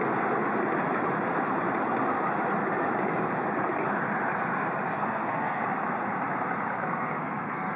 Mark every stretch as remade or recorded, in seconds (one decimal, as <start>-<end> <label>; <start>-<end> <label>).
0.0-5.0 recorded; 5.0-5.6 remade; 5.6-6.8 recorded; 6.8-7.8 remade